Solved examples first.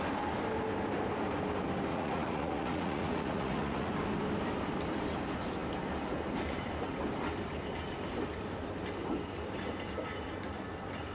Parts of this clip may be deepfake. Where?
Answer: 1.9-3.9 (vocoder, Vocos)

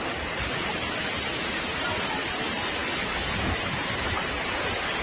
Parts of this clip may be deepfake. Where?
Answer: 0.0-5.0 (vocoder, BigVGAN v2)